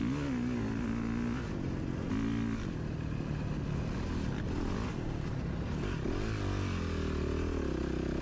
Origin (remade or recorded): recorded